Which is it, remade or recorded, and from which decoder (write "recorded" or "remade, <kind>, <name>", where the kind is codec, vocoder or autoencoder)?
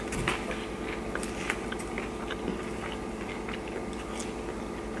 recorded